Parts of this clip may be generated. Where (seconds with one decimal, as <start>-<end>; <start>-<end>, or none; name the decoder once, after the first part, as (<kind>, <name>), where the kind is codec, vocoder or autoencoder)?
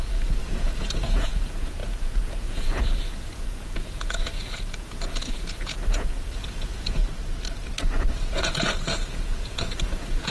0.0-7.0 (vocoder, Vocos); 8.1-10.3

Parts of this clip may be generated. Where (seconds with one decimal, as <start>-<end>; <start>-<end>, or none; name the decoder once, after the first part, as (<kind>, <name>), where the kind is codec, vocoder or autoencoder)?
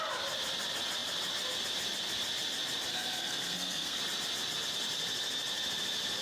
2.9-4.0 (codec, SNAC)